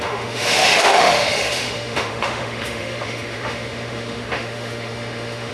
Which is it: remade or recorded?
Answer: remade